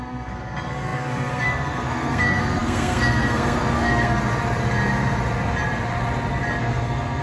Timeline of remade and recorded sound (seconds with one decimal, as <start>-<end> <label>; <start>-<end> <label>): 0.0-4.2 remade; 4.2-6.6 recorded; 6.6-7.2 remade